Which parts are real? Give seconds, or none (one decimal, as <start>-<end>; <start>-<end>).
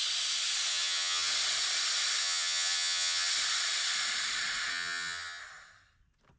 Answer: 0.0-0.7; 1.3-2.2; 3.3-4.7; 5.4-6.4